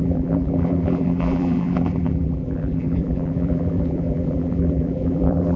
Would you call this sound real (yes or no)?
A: no